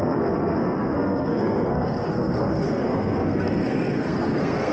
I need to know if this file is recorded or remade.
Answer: remade